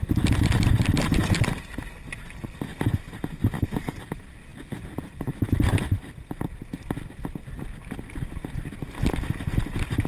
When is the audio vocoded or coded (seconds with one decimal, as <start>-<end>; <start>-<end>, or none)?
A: 0.0-2.7; 3.9-4.5; 5.1-10.1